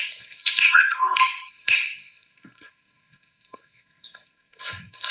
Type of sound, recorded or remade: remade